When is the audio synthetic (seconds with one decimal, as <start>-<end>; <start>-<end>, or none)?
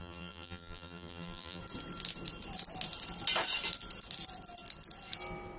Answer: 0.0-1.6